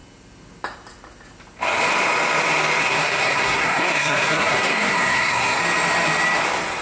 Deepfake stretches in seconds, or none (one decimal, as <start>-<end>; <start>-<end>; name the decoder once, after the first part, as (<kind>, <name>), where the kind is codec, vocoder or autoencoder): 2.8-5.6 (codec, SNAC)